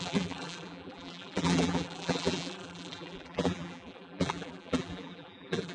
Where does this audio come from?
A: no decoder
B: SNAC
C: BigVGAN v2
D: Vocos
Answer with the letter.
C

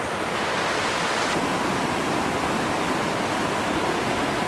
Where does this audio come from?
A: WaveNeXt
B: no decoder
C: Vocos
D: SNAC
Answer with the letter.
B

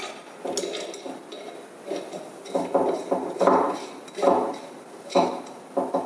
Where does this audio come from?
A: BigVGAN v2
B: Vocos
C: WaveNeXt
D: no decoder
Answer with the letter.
D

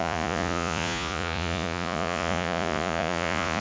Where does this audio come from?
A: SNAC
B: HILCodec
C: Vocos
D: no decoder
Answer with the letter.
C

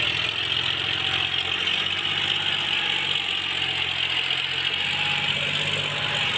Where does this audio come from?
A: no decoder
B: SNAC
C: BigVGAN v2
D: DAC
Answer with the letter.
A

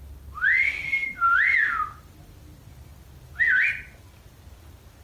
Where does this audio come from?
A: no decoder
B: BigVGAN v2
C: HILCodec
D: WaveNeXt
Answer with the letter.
A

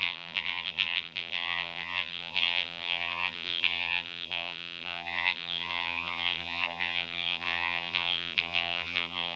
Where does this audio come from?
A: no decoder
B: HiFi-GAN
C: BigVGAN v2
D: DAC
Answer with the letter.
C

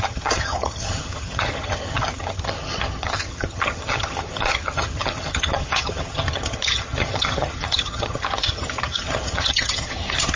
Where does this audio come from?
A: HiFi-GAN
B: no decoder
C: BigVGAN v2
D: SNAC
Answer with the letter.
A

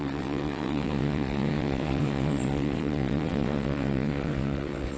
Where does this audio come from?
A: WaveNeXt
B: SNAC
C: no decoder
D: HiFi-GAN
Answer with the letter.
A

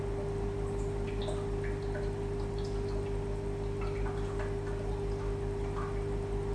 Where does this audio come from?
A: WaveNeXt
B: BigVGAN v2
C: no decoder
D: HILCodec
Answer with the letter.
B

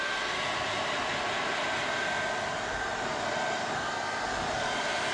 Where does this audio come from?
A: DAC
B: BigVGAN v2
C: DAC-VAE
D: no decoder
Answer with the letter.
D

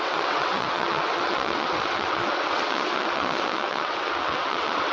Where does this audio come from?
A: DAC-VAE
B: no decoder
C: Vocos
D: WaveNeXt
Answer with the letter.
D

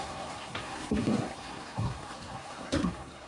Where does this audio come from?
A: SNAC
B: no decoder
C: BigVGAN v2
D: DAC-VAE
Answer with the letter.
A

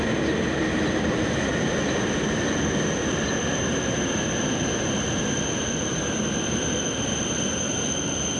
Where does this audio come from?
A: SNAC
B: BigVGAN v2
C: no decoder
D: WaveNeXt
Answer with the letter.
C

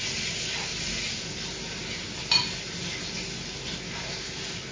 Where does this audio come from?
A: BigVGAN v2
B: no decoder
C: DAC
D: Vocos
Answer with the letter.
B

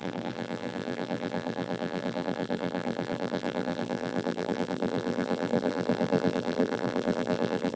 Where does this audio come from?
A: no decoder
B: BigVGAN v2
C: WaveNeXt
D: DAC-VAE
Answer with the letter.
B